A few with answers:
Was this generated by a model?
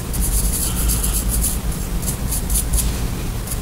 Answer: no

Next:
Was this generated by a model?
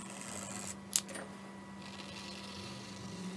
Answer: no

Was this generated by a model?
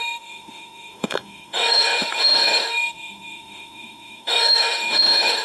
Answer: yes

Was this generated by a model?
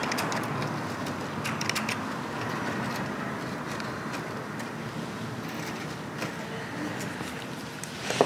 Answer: no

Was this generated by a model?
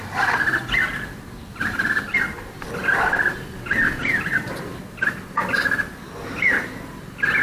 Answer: no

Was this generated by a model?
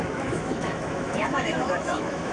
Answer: yes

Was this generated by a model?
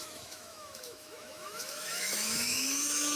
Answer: yes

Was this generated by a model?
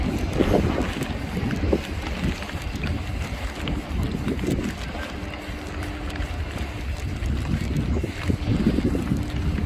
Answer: no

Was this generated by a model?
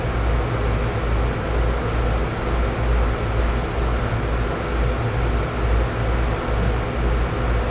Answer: no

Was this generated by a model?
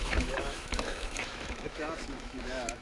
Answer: yes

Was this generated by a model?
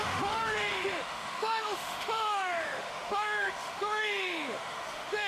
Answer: yes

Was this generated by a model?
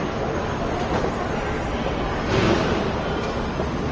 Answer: no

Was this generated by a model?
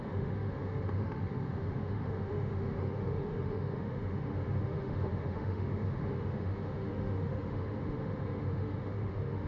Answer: yes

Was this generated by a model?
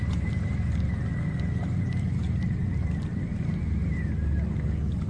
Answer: no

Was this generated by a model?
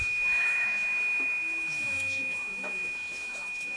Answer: yes